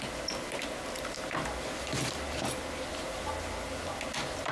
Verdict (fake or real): real